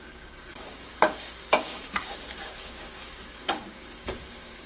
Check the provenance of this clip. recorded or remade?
remade